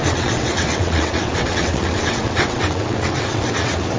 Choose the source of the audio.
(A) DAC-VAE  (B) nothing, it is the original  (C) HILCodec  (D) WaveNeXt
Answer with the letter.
D